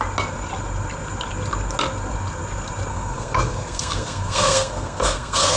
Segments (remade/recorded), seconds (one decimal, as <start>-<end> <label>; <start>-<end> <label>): 0.0-2.9 recorded; 2.9-5.6 remade